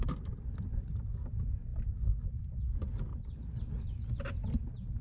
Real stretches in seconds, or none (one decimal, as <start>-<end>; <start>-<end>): 0.0-5.0